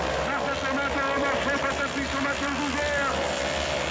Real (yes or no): yes